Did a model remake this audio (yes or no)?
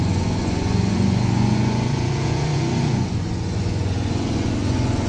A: yes